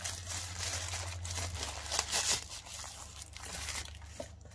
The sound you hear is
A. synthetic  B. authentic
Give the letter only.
B